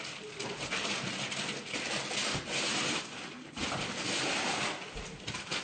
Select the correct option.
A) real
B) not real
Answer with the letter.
A